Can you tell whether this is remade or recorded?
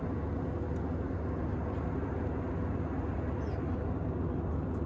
recorded